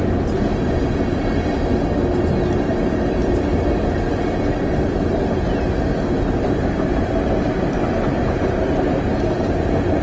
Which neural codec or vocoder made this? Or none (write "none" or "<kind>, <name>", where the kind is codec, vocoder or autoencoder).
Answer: none